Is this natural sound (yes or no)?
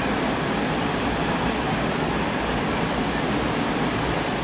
yes